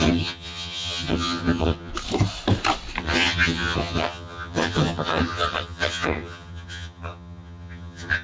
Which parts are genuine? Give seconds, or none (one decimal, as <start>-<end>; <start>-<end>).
1.9-3.0